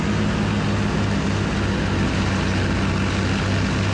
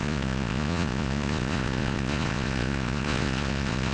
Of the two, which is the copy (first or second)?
second